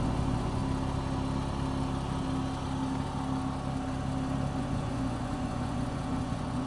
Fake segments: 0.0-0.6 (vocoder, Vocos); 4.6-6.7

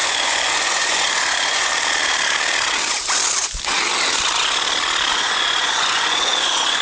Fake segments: 0.0-1.7 (vocoder, Vocos); 5.1-6.8

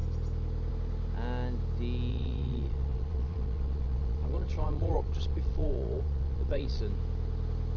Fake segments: 2.1-6.8 (vocoder, Vocos)

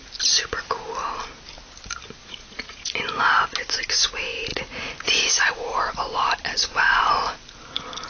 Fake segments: 2.2-2.9 (vocoder, Vocos); 4.5-5.4

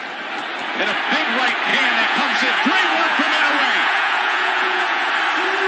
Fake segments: 1.7-5.1 (vocoder, Vocos)

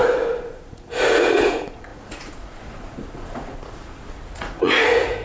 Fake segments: 0.0-5.2 (vocoder, Vocos)

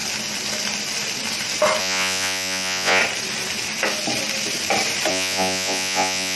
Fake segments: 1.8-3.0 (vocoder, Vocos); 5.1-6.4

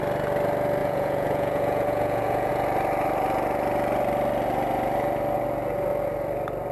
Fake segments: 0.8-2.5 (vocoder, Vocos)